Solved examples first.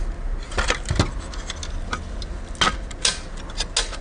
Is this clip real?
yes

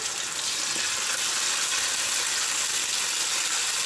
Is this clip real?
yes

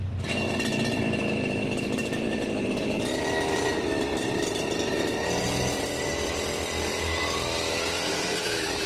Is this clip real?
no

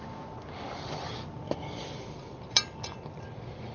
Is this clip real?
yes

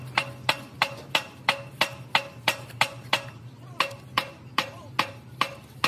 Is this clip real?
yes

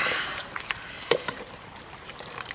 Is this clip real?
no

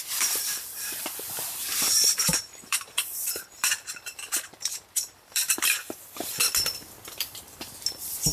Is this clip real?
no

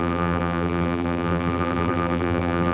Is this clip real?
no